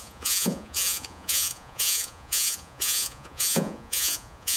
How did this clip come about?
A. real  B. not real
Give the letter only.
B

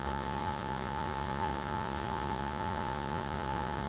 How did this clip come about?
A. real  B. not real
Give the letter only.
B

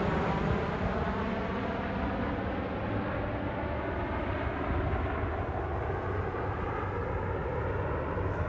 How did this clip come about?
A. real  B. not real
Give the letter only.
A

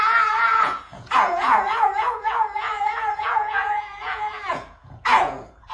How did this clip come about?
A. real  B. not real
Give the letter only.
B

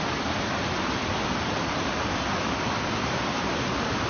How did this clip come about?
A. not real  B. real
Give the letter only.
B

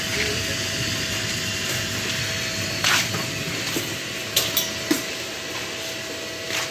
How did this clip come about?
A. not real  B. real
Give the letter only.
B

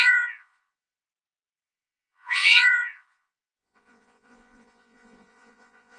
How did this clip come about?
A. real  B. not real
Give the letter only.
B